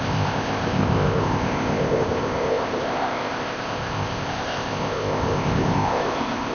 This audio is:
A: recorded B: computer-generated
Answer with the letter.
B